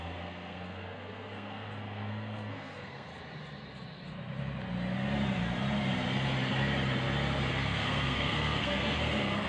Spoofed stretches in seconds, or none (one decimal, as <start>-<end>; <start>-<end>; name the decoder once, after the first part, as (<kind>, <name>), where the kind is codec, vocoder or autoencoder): 0.0-3.1 (codec, SNAC); 7.5-9.5